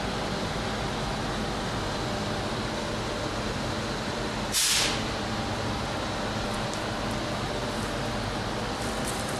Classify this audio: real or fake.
real